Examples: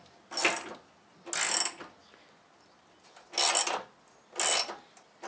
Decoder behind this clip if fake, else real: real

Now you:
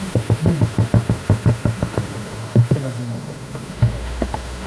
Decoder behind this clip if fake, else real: fake, autoencoder, DAC-VAE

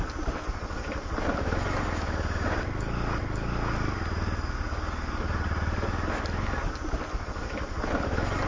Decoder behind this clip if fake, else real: real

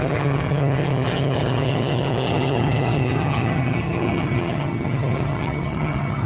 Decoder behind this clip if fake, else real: fake, vocoder, HiFi-GAN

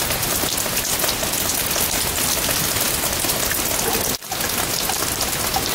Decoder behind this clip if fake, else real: real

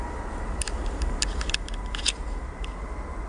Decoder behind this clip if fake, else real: real